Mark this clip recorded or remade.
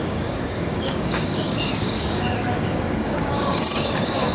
remade